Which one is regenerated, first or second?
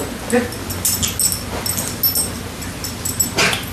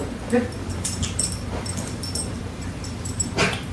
second